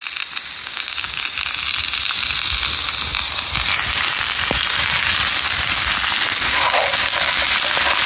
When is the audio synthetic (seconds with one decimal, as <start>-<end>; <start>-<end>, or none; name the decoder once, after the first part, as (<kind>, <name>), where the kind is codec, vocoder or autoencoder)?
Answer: 0.6-1.2 (codec, DAC)